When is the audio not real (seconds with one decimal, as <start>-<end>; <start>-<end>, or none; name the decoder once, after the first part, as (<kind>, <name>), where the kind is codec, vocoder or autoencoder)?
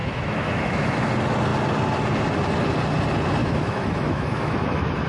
0.0-1.1 (autoencoder, DAC-VAE); 3.4-5.1